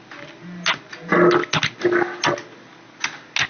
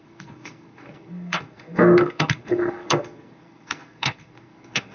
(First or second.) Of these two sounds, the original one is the first